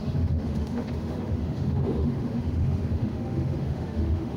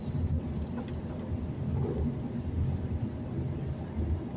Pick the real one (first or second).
second